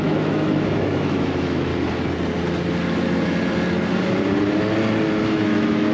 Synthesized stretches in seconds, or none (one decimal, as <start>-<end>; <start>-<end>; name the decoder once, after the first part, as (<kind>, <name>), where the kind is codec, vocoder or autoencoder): 0.0-1.7 (autoencoder, DAC-VAE); 5.2-5.9